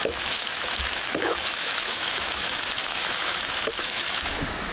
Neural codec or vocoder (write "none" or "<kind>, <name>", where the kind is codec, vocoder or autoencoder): autoencoder, DAC-VAE